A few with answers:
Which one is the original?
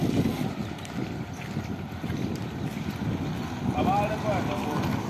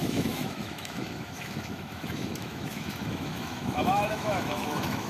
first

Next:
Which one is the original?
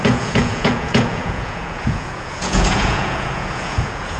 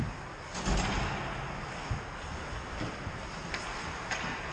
second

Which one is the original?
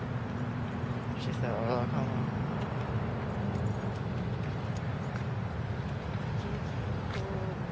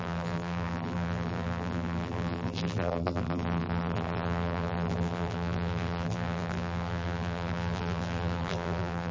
first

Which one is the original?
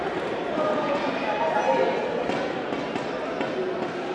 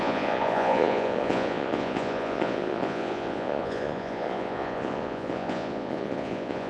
first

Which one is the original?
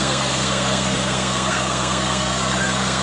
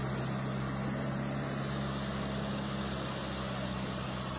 second